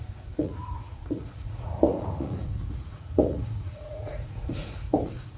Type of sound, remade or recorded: remade